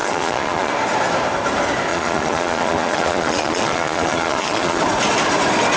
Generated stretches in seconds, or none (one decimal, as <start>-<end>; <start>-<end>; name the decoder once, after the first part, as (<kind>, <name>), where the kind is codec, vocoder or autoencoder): 0.0-0.7 (vocoder, Vocos); 1.9-4.8